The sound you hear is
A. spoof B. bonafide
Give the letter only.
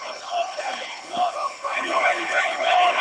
A